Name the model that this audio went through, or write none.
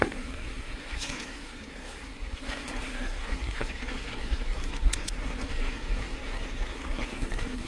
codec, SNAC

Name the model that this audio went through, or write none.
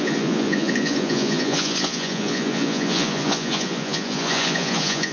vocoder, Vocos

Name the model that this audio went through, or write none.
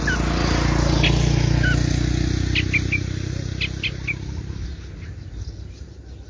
none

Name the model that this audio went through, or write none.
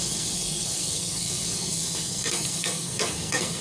codec, SNAC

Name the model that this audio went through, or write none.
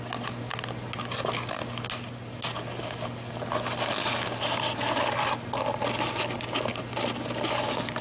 none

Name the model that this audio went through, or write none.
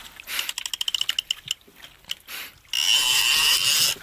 none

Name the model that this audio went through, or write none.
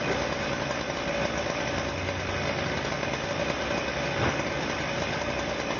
none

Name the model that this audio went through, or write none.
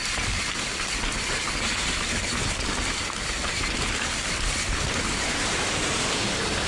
none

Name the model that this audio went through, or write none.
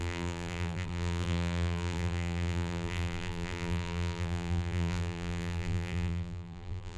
vocoder, BigVGAN v2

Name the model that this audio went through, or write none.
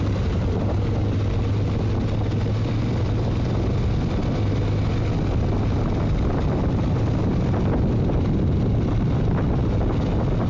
none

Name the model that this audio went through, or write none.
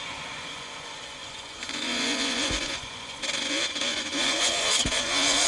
vocoder, Vocos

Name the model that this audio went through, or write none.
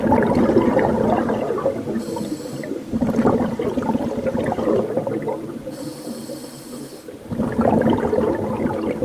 none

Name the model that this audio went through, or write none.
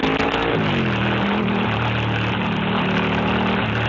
none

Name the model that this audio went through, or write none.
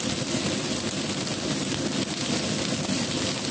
none